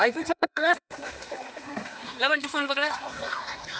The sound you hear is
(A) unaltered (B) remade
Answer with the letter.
B